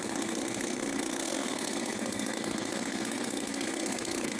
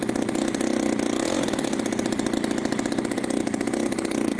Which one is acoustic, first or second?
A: second